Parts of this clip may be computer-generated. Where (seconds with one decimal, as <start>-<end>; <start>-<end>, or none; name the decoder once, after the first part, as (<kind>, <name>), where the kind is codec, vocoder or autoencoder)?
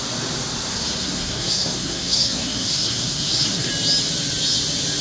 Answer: 0.7-3.7 (codec, SNAC)